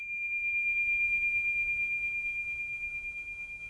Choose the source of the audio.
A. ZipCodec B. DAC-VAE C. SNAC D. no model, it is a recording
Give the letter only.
B